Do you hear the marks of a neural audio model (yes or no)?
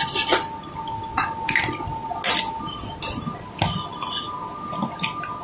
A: no